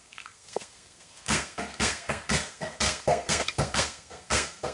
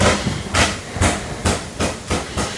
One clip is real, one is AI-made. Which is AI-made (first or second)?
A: first